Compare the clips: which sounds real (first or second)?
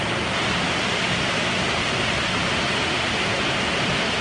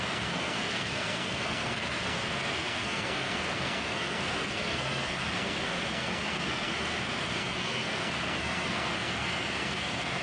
first